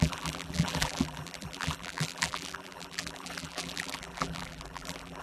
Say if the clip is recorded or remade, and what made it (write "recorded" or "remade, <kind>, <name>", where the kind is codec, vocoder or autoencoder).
remade, vocoder, BigVGAN v2